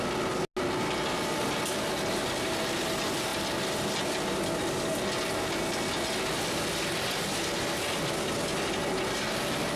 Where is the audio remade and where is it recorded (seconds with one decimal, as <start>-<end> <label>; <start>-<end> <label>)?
0.0-9.8 recorded